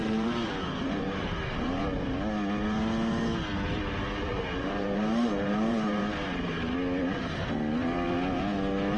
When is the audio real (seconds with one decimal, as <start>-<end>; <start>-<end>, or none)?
1.8-4.3; 6.0-9.0